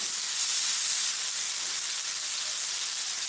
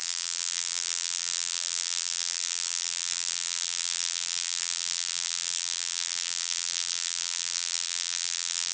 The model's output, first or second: second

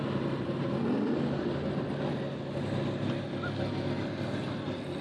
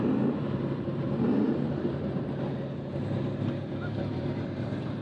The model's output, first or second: second